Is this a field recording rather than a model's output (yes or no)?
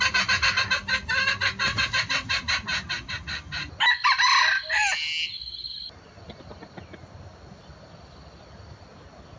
yes